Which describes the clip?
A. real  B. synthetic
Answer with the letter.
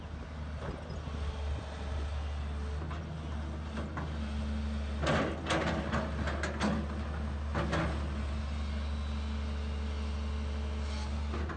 A